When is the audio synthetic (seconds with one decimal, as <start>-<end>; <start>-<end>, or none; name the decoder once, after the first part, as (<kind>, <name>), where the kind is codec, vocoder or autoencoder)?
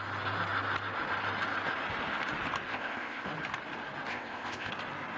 2.7-3.3 (codec, ZipCodec); 4.1-4.7